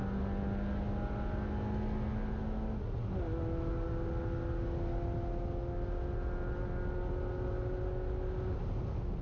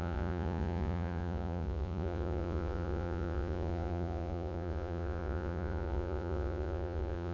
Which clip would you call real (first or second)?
first